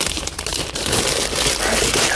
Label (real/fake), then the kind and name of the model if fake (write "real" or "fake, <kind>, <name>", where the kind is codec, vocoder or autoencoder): real